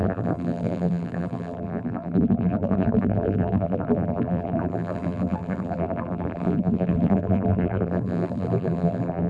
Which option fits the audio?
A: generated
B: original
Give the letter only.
A